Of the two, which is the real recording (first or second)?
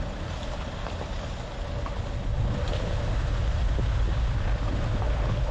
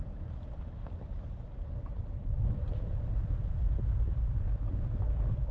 first